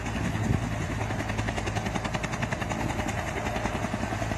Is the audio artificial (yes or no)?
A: no